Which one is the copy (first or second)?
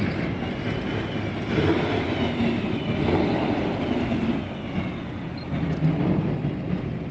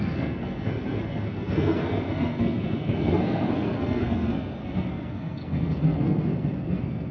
second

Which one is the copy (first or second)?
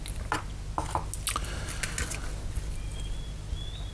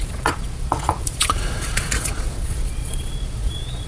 second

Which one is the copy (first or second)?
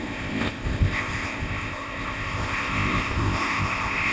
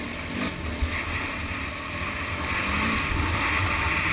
first